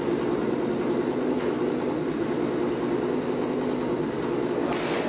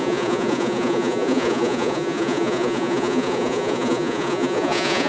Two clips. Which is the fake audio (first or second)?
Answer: second